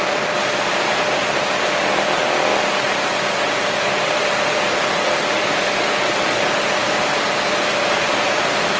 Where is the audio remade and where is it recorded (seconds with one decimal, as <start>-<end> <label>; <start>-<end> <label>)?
0.0-8.8 recorded